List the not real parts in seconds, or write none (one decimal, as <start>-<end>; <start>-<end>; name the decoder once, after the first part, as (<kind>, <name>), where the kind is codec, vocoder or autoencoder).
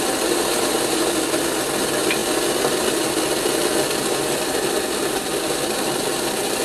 none